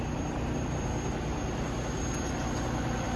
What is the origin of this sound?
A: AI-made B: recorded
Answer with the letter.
B